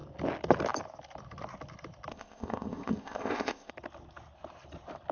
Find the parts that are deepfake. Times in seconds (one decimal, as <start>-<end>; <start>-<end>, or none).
2.1-3.7